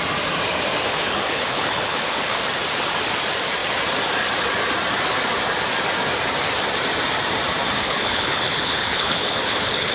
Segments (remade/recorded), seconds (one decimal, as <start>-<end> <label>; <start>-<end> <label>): 0.0-0.9 recorded; 0.9-2.4 remade; 2.4-7.8 recorded; 7.8-9.9 remade